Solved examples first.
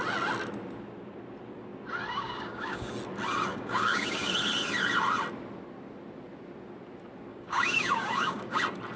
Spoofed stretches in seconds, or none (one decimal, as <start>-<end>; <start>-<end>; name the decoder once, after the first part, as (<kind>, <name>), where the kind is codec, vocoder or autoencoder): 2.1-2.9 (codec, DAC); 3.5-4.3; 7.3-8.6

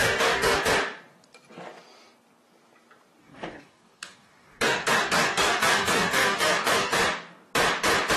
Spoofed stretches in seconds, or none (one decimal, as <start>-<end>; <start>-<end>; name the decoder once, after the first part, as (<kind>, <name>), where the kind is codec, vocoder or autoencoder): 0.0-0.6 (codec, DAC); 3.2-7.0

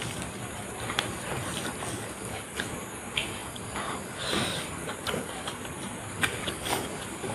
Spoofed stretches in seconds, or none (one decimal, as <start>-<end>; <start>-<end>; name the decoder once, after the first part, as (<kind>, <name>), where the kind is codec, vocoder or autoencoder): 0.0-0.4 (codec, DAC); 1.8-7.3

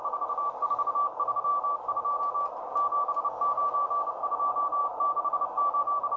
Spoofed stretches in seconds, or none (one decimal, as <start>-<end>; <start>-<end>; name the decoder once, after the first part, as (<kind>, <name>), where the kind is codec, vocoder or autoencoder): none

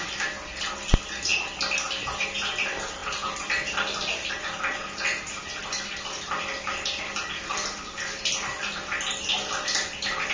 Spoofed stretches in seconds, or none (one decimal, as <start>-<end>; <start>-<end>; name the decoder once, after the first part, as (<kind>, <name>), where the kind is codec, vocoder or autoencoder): none